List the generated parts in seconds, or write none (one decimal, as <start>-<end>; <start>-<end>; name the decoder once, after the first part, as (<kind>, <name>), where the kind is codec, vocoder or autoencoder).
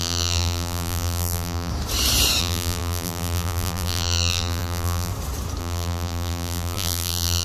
0.0-1.7 (vocoder, BigVGAN v2); 2.4-5.1; 5.6-7.4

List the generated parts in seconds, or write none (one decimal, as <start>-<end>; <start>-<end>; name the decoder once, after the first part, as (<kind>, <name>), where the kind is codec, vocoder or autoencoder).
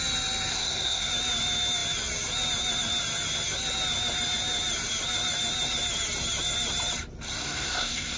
0.5-1.1 (codec, SNAC); 7.4-8.2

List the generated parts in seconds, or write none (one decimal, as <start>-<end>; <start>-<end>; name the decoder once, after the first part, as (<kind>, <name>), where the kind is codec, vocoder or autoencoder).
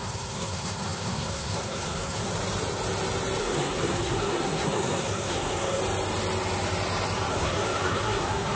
0.0-2.3 (codec, SNAC); 3.4-5.8; 7.3-8.6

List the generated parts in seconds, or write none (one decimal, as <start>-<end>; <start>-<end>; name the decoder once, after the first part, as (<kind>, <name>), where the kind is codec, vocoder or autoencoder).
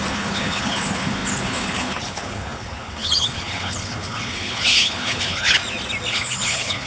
0.0-5.6 (codec, HILCodec); 6.1-6.9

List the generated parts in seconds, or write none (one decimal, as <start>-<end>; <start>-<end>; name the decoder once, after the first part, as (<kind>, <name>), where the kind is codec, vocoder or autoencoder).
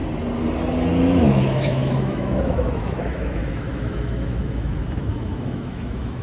1.2-6.2 (autoencoder, DAC-VAE)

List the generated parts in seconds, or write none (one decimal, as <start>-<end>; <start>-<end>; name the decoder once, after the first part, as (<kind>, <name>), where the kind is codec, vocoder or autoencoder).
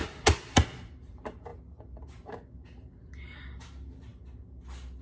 none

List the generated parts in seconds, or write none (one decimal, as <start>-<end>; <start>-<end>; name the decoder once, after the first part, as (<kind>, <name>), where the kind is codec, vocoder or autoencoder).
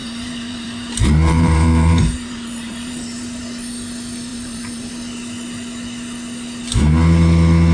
0.0-3.4 (vocoder, BigVGAN v2); 4.3-4.9